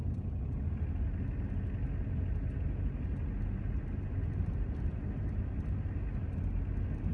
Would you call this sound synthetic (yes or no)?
no